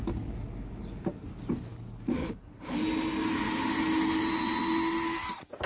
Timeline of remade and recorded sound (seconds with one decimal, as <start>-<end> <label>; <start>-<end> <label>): 0.0-2.2 recorded; 2.2-2.8 remade; 2.8-5.7 recorded